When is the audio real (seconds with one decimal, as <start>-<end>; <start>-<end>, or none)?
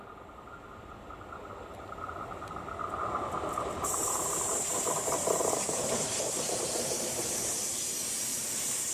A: 0.0-3.0; 7.8-8.3